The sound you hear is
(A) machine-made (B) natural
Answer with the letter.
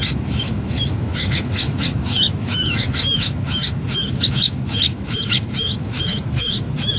A